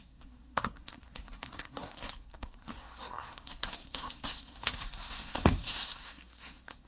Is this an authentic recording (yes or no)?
no